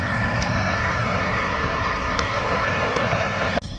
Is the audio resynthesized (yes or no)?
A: yes